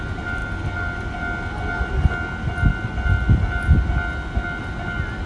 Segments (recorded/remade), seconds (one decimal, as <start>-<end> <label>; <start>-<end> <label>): 0.0-5.3 recorded